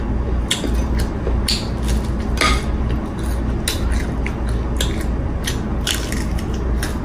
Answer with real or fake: real